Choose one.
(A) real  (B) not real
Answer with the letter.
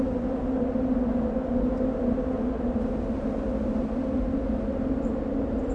A